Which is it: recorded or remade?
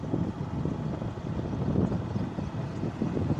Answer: recorded